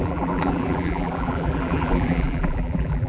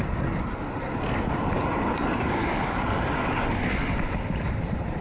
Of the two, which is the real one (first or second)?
second